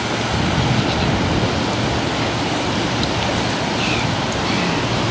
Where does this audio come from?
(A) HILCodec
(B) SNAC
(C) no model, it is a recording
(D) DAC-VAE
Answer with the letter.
C